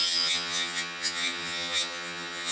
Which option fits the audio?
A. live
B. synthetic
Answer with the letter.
B